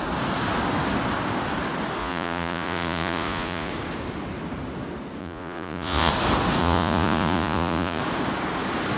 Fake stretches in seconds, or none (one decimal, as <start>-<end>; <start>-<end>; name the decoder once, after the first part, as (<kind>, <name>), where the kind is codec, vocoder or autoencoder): 2.0-3.7 (vocoder, Vocos); 5.2-6.1; 6.6-8.0